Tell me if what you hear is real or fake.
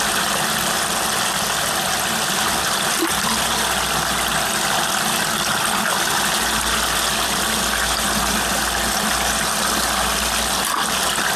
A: real